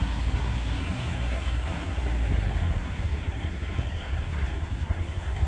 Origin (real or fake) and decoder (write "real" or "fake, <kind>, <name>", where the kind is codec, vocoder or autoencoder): fake, codec, SNAC